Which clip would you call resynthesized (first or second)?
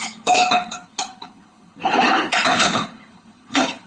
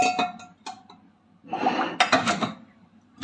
first